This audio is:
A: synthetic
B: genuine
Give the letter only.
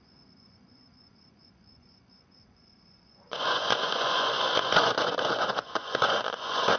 A